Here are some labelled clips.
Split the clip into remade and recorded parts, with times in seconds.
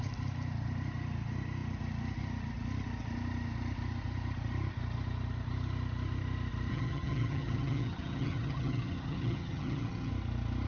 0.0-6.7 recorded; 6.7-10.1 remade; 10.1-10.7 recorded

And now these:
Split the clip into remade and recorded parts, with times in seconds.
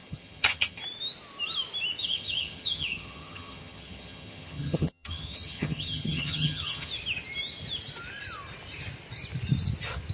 0.0-0.8 remade; 0.8-2.0 recorded; 2.0-6.9 remade; 6.9-10.1 recorded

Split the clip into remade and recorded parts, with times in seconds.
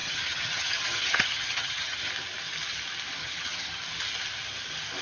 0.0-2.1 remade; 2.1-3.2 recorded; 3.2-3.8 remade; 3.8-5.0 recorded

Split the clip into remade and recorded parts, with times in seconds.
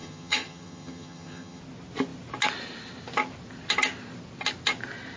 0.0-1.6 remade; 1.6-5.2 recorded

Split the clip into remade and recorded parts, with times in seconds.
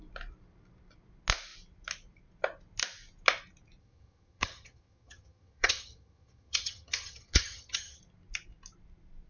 0.0-3.8 recorded; 3.8-8.0 remade; 8.0-9.3 recorded